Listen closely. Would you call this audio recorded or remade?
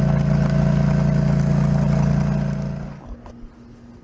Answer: recorded